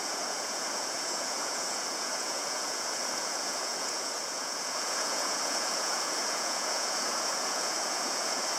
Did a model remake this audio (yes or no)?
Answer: yes